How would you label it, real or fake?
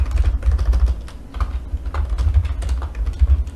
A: real